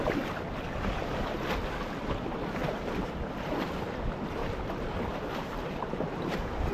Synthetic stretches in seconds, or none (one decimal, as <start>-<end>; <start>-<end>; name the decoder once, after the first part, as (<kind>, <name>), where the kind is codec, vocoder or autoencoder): 4.4-6.7 (vocoder, BigVGAN v2)